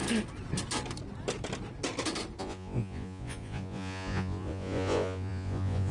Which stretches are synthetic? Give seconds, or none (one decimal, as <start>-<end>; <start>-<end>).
2.4-5.9